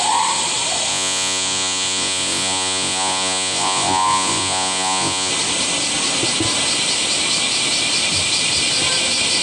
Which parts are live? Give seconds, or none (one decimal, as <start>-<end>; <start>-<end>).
0.0-0.9; 5.3-9.4